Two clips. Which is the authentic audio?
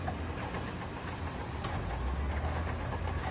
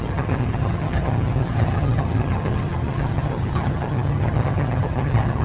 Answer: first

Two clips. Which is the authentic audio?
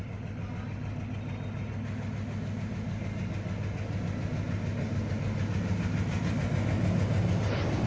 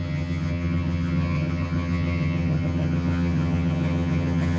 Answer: first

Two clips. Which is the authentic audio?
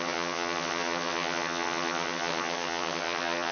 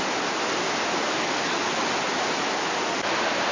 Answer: second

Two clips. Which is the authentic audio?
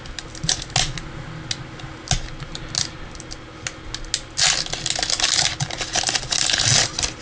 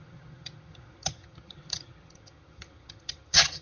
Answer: first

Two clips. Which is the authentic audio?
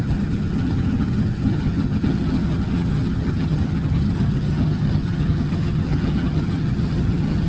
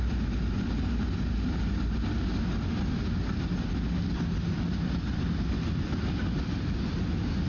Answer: second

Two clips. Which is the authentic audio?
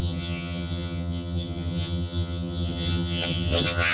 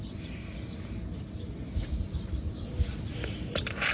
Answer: second